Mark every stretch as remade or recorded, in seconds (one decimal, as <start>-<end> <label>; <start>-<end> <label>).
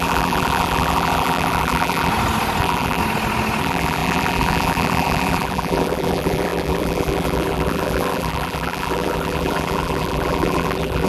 0.0-2.1 remade; 2.1-2.6 recorded; 2.6-3.0 remade; 3.0-3.6 recorded; 3.6-11.1 remade